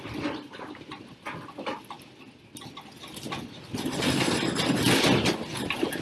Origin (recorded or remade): recorded